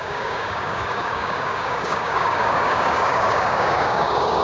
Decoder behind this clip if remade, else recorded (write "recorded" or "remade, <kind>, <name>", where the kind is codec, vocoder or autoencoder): remade, codec, DAC